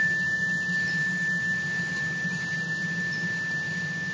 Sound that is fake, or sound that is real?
real